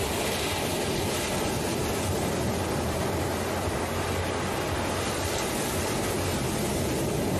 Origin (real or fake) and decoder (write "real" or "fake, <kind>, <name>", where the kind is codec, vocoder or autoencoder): real